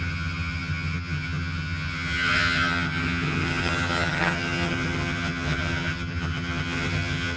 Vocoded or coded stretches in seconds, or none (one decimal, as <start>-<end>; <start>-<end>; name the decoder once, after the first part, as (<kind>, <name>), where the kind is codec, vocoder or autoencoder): 0.0-7.4 (vocoder, HiFi-GAN)